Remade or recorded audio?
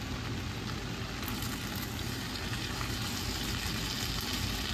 recorded